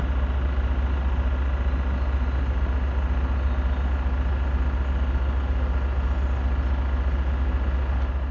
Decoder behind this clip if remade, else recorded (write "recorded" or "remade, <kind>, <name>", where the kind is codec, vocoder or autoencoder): recorded